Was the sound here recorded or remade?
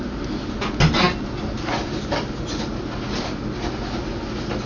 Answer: recorded